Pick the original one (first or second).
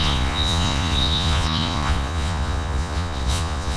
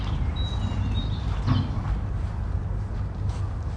second